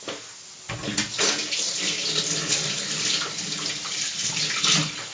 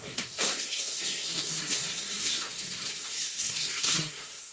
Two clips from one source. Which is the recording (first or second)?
first